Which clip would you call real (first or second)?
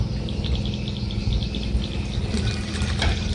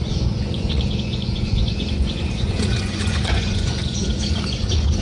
first